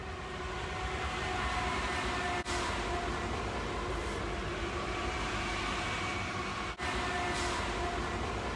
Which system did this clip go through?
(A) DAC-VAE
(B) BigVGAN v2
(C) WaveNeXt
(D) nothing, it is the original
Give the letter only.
D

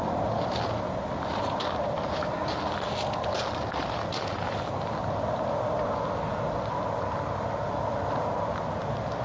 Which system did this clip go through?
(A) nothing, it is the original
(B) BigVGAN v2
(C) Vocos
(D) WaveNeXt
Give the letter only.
A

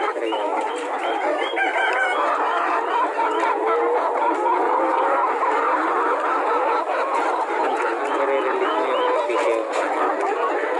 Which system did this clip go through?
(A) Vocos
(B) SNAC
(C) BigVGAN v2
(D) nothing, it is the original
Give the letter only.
D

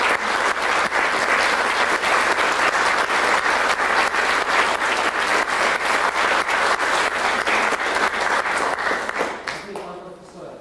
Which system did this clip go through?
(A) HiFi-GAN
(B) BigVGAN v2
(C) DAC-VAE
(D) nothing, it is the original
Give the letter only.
D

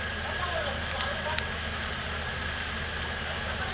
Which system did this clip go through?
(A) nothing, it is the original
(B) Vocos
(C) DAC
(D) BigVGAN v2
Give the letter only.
A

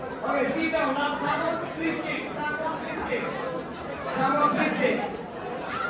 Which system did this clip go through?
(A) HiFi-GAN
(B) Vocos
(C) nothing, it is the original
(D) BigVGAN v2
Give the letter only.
C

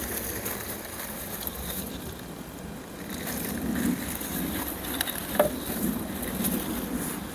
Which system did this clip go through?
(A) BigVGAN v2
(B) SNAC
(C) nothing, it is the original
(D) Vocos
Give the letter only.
C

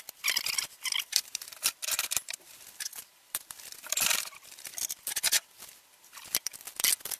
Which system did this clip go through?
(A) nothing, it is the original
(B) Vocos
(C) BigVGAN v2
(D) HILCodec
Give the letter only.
C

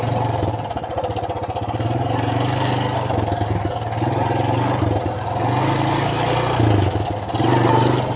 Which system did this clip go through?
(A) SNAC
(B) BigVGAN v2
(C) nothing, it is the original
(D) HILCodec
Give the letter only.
C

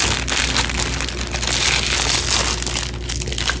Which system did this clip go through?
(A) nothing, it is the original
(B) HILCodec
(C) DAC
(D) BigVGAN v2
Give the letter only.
A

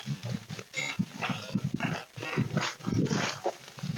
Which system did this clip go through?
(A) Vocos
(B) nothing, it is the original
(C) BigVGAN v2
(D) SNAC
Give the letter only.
C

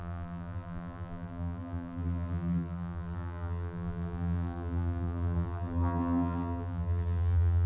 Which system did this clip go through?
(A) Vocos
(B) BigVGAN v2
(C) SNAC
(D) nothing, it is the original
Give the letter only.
B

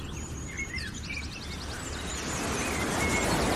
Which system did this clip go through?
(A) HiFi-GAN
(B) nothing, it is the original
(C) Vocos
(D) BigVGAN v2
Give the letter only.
B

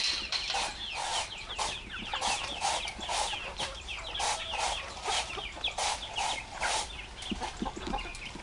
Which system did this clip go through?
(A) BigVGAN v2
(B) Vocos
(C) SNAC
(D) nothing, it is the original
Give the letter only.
D